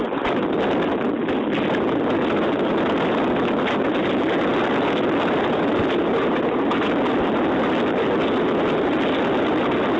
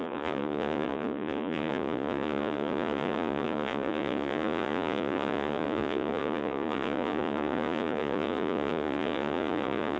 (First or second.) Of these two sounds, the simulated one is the second